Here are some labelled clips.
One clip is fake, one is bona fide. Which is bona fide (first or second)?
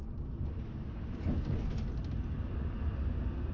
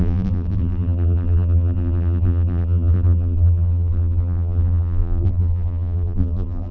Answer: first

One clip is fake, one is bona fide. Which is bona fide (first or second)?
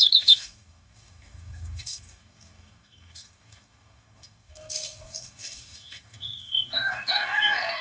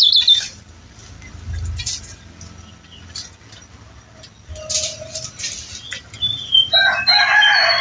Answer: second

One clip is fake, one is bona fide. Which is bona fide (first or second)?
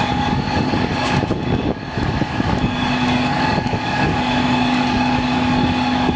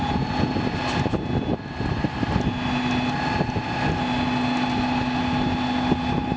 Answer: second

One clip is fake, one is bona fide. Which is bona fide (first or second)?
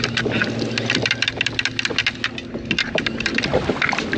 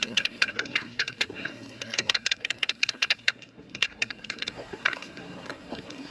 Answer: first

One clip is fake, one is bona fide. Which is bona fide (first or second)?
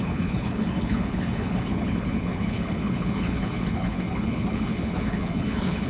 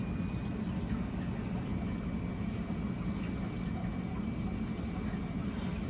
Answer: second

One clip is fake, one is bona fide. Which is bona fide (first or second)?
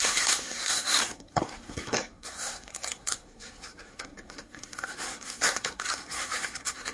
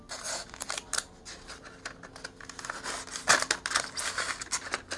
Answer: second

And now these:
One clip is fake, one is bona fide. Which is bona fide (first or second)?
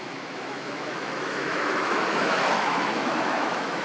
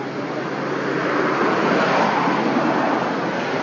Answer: second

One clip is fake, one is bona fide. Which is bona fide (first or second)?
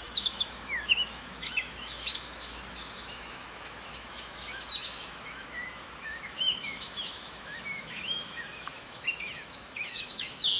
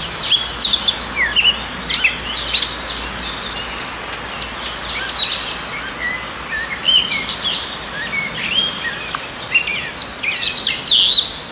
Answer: second